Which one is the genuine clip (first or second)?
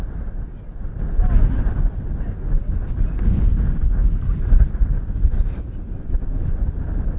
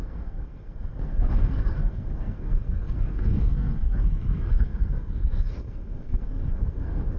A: first